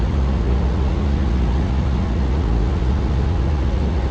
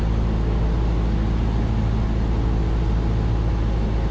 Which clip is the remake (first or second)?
first